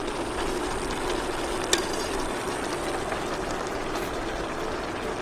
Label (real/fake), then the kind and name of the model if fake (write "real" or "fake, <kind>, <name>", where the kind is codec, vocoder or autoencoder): real